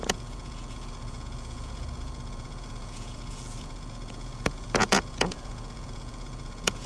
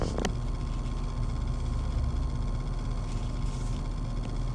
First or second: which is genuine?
second